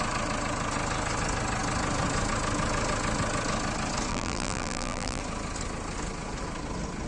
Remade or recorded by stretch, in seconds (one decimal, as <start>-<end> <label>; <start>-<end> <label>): 0.0-4.1 recorded; 4.1-5.2 remade; 5.2-7.1 recorded